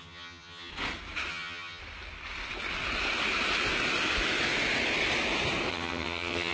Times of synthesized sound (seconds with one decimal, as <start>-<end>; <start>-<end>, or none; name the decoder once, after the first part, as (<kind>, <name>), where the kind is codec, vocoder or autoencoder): 0.0-0.7 (vocoder, HiFi-GAN); 1.3-1.8; 5.7-6.5

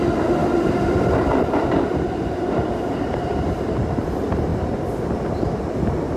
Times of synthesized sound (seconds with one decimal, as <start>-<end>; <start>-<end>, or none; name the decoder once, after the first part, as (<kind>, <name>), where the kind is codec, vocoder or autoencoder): 0.4-3.7 (vocoder, BigVGAN v2)

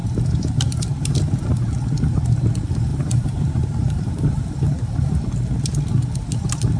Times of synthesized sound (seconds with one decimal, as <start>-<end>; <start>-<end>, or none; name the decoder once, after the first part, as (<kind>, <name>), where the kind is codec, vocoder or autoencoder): 0.0-1.6 (vocoder, BigVGAN v2); 2.9-5.1

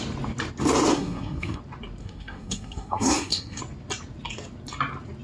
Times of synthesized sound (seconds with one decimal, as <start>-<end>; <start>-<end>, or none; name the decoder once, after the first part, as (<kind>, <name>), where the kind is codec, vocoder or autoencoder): 0.9-1.6 (codec, SNAC); 2.0-3.6

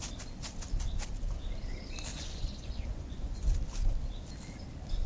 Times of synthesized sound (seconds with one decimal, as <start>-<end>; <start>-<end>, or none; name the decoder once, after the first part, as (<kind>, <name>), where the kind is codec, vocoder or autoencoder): 2.1-3.5 (vocoder, Vocos)

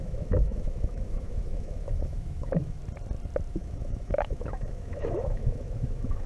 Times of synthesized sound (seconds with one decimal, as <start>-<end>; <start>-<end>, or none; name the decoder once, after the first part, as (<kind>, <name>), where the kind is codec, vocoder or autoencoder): 0.0-2.8 (autoencoder, DAC-VAE); 3.5-6.3

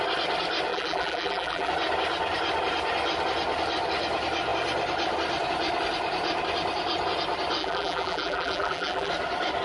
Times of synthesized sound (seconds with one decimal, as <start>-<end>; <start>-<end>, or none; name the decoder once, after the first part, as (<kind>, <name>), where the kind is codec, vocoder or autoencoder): 0.7-1.7 (vocoder, BigVGAN v2); 7.6-9.1

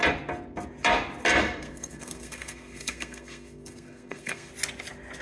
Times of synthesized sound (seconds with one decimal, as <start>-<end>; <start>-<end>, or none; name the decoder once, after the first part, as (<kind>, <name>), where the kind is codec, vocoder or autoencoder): 1.4-4.5 (codec, SNAC)